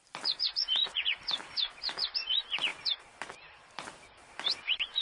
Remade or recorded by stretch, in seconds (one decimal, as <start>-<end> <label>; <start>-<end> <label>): 0.0-0.8 remade; 0.8-1.8 recorded; 1.8-2.7 remade; 2.7-3.4 recorded; 3.4-5.0 remade